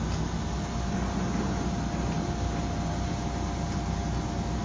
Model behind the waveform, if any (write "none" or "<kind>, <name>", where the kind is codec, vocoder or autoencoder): none